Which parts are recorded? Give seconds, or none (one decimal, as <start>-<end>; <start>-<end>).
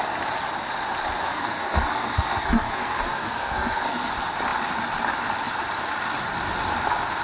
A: 0.0-1.3; 4.1-7.2